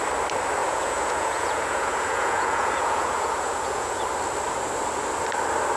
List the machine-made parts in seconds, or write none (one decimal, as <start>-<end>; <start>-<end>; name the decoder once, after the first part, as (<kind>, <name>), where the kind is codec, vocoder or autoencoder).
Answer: 0.6-4.0 (vocoder, Vocos)